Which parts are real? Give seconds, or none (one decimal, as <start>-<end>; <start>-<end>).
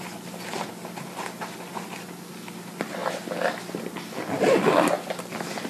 0.0-5.7